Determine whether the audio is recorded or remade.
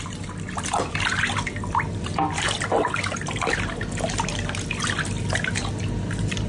recorded